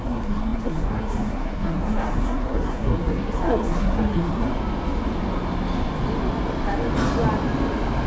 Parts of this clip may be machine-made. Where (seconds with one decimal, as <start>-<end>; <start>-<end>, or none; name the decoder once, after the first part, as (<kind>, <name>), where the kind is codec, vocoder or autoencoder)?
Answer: 0.0-4.5 (codec, SNAC)

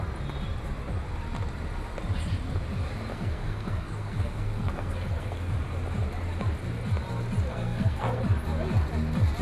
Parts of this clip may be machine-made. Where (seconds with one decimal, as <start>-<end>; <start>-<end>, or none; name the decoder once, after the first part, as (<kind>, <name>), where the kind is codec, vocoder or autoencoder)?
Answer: 3.1-5.5 (codec, SNAC); 7.5-8.2

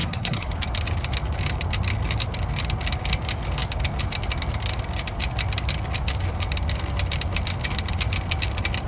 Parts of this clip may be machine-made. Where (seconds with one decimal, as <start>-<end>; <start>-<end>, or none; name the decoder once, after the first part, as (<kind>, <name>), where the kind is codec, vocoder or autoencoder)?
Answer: 0.0-0.5 (codec, SNAC)

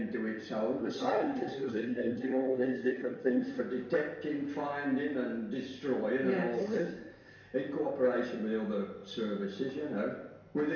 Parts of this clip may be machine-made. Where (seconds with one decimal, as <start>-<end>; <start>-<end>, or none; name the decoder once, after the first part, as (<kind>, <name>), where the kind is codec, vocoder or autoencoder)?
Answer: 0.8-3.6 (codec, SNAC); 6.6-7.3

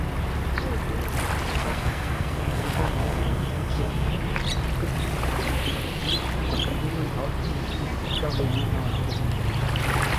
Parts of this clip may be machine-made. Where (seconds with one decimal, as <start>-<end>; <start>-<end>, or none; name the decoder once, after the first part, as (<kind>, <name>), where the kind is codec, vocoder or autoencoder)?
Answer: 1.6-4.1 (codec, SNAC)

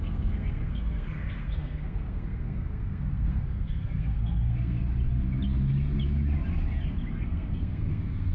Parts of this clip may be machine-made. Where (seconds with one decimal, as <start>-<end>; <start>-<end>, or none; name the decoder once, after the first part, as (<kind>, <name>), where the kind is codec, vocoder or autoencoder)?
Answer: 0.0-4.8 (codec, SNAC); 7.1-8.3

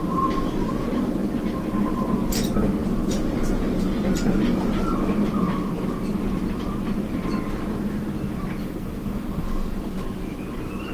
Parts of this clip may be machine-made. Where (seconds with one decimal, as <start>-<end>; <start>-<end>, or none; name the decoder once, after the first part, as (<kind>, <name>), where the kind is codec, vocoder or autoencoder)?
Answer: 8.6-9.8 (codec, SNAC)

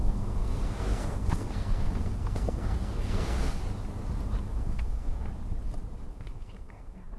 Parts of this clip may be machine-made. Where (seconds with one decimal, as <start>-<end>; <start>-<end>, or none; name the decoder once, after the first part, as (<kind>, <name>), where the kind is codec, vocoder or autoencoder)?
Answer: 0.0-3.6 (codec, SNAC); 4.4-5.3; 6.1-7.2